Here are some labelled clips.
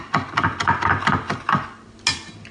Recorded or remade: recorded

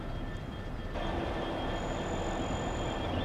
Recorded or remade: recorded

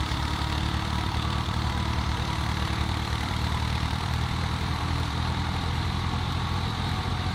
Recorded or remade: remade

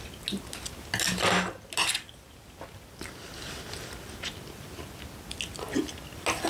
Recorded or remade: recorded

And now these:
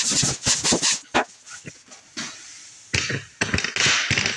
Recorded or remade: recorded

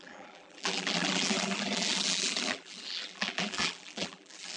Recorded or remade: remade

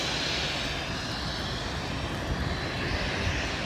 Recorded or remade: recorded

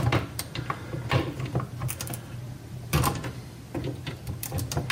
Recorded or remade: recorded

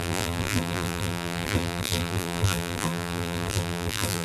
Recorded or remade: remade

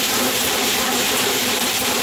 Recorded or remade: remade